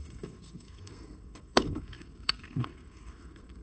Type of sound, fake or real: fake